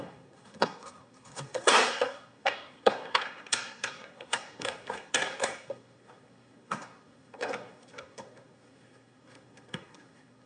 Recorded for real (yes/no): no